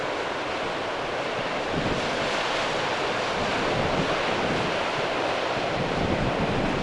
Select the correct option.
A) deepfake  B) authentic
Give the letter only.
B